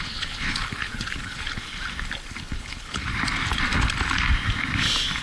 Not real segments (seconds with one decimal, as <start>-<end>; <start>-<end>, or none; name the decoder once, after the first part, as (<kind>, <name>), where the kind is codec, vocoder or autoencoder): 0.0-1.7 (codec, HILCodec); 2.4-3.1